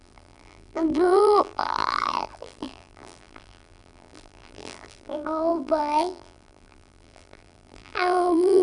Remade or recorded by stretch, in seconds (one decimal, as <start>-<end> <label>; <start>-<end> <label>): 0.0-8.6 remade